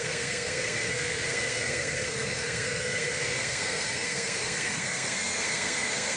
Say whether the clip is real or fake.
fake